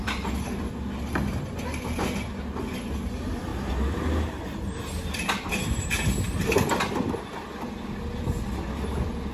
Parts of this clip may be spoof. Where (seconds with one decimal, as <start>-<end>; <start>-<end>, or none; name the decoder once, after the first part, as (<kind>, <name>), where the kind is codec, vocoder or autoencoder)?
none